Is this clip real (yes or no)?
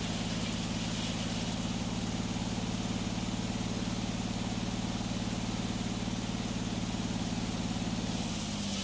yes